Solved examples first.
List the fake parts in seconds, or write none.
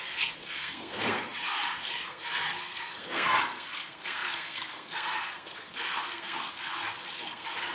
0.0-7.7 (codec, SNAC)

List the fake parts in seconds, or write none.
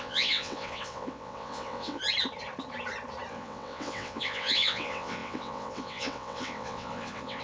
0.0-2.0 (vocoder, WaveNeXt); 3.3-7.4